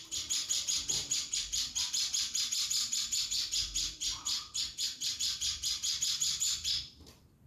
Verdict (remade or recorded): remade